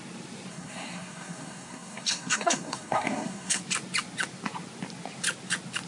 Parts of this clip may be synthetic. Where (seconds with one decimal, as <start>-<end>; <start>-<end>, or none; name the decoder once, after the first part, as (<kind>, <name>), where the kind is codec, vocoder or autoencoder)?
0.5-3.6 (codec, SNAC)